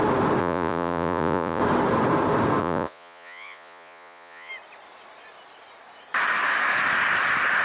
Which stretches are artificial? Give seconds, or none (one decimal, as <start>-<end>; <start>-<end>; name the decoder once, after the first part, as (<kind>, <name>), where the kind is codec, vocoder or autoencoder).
0.4-1.6 (vocoder, Vocos); 2.6-4.5